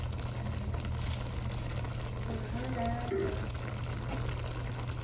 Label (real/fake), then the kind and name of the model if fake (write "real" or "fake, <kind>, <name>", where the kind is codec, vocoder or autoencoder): real